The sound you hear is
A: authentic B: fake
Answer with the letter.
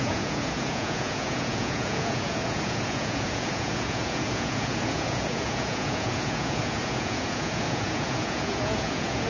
B